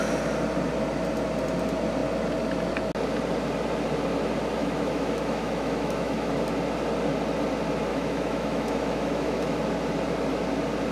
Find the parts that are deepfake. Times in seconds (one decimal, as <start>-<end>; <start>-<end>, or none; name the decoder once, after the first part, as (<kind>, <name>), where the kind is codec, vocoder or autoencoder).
4.6-6.3 (autoencoder, DAC-VAE); 7.9-9.6